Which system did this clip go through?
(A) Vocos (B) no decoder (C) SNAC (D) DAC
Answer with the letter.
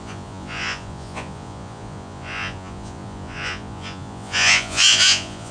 A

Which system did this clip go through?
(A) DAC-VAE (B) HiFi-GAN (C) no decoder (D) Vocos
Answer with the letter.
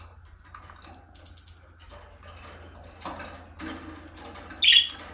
C